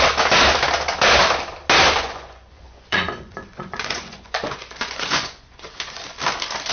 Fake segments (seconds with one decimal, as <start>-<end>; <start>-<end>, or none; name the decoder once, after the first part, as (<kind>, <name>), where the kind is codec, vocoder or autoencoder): 2.0-6.0 (vocoder, Vocos)